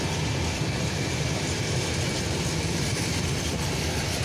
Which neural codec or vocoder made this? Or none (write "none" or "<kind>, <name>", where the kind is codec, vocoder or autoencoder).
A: none